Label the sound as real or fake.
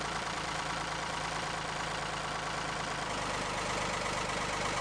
fake